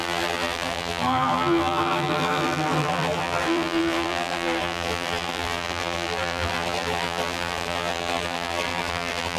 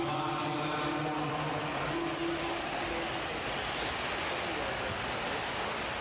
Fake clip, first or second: first